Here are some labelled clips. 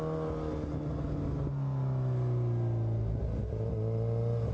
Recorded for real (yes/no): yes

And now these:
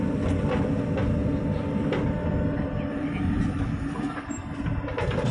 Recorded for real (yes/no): yes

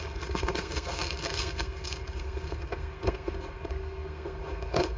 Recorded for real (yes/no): no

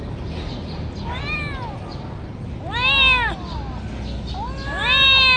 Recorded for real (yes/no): yes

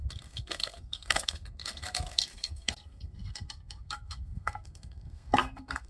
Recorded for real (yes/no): no